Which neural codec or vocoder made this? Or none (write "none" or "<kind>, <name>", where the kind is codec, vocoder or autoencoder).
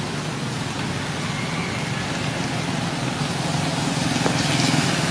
none